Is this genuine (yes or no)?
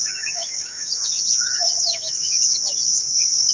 no